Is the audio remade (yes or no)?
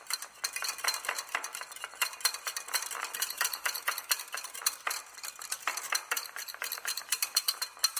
no